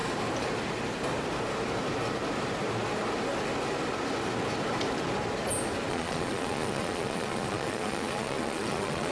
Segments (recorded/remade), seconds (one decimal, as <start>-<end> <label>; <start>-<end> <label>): 0.0-5.9 recorded; 5.9-9.1 remade